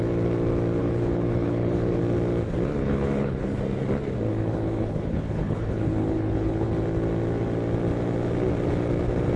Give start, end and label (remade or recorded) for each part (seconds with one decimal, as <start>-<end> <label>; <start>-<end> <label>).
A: 0.0-0.8 recorded; 0.8-2.0 remade; 2.0-2.8 recorded; 2.8-3.6 remade; 3.6-4.3 recorded; 4.3-6.7 remade; 6.7-9.4 recorded